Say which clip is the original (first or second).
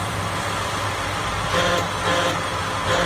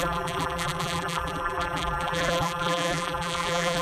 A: first